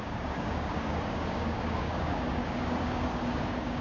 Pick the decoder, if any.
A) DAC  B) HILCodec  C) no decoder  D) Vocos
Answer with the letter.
A